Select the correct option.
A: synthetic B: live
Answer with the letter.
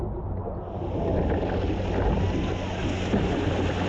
B